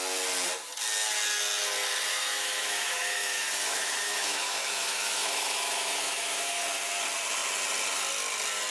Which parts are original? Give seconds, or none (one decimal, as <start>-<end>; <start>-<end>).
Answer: 0.0-2.1; 6.6-8.7